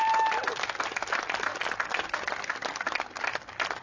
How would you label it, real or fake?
real